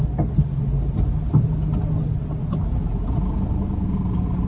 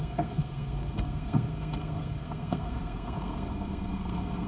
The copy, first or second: second